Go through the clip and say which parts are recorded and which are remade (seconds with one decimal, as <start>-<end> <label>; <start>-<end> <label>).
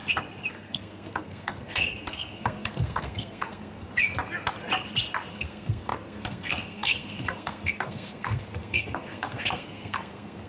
0.0-0.5 recorded; 0.5-3.9 remade; 3.9-5.3 recorded; 5.3-10.5 remade